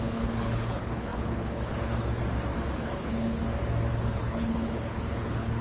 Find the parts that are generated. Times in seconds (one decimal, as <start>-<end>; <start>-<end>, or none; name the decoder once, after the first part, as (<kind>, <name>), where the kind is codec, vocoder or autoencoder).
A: 0.0-2.2 (codec, HILCodec); 2.8-3.4; 3.9-5.6